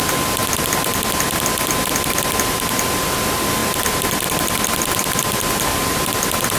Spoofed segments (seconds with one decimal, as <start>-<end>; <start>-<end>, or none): none

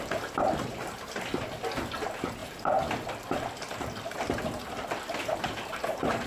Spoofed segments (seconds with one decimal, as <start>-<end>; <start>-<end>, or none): none

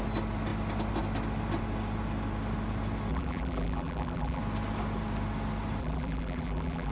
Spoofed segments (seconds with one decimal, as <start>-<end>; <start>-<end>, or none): 3.1-4.4; 5.8-6.9